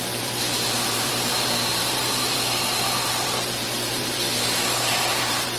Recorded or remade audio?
remade